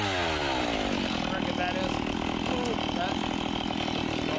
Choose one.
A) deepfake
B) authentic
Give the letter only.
B